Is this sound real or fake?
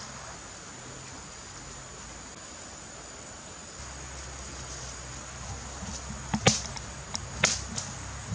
real